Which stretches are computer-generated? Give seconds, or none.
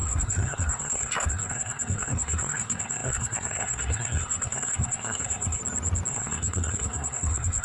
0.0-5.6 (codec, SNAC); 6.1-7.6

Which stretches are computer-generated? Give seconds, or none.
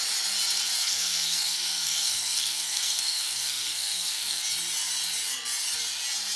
0.8-4.4 (codec, SNAC)